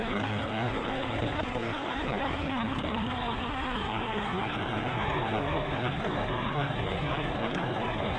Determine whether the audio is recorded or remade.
remade